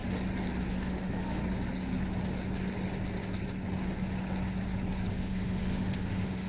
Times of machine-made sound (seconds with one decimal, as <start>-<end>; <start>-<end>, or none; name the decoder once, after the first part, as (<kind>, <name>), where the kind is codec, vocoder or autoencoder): 0.7-1.4 (autoencoder, DAC-VAE); 5.1-6.5